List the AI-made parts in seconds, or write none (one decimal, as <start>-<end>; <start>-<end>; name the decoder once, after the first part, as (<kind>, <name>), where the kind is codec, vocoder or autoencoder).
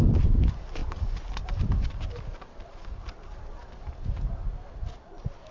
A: 0.8-3.0 (vocoder, BigVGAN v2)